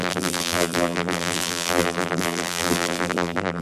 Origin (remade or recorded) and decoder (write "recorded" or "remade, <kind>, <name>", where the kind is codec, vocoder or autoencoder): remade, vocoder, BigVGAN v2